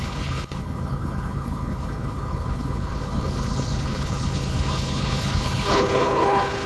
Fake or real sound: fake